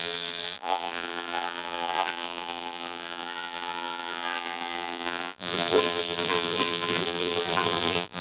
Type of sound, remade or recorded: remade